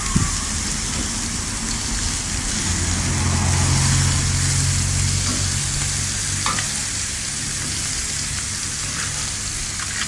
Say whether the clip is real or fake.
real